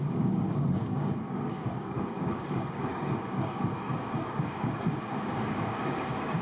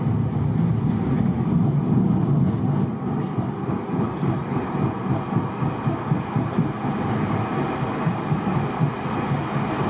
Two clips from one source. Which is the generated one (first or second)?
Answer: first